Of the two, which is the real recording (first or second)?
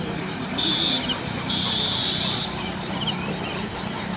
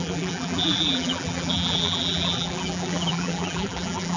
first